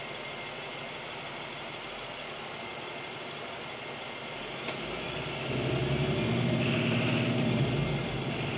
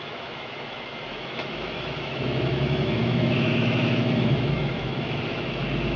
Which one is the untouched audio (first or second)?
first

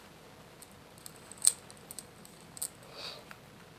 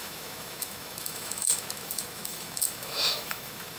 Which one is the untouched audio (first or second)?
first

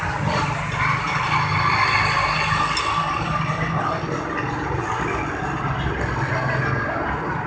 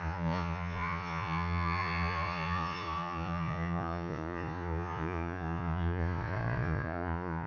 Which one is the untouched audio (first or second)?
first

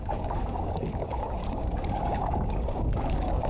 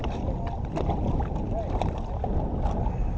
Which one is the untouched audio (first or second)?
second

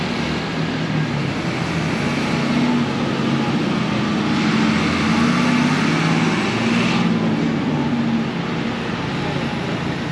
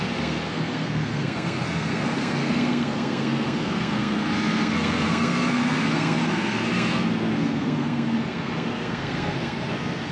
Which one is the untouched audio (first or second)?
first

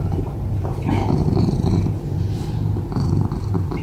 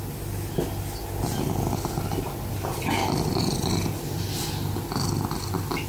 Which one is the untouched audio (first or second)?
second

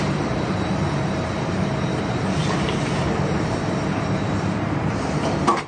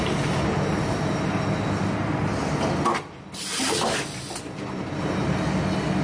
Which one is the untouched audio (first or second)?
second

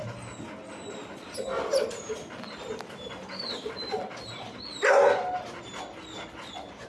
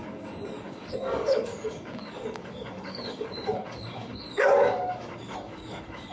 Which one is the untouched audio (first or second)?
first